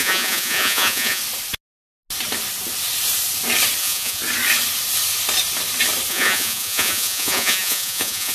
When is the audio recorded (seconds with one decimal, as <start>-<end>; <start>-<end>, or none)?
1.2-3.8; 4.2-6.1